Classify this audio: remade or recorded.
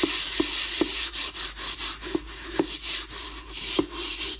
remade